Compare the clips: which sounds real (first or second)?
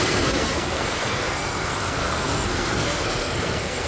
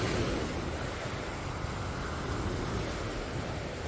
second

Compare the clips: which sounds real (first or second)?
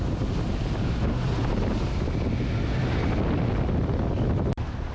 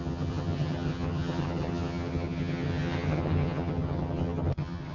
first